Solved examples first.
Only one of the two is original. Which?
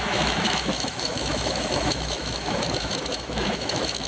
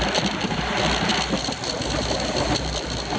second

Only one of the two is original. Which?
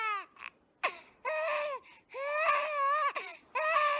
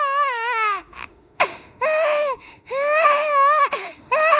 first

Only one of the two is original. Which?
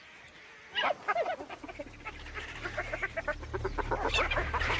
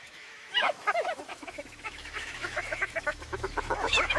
first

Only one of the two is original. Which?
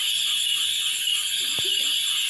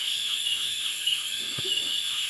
first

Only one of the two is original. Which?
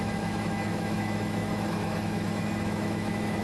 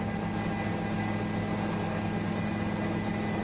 second